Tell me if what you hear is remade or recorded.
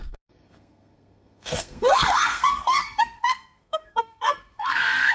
remade